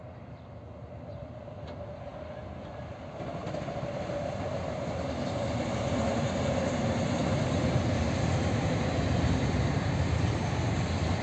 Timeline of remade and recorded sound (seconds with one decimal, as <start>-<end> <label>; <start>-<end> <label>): 0.0-11.2 recorded